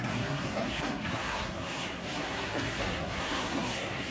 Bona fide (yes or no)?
no